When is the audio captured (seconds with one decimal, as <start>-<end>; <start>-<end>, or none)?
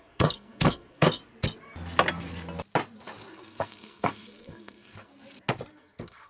1.2-3.3; 5.1-5.7